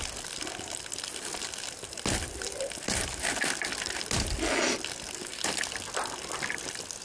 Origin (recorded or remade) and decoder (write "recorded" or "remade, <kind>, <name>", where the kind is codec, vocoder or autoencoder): recorded